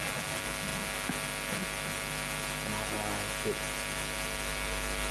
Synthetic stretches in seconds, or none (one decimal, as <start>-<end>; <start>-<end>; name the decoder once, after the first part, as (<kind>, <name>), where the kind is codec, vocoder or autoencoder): none